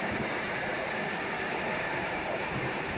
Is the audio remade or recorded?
remade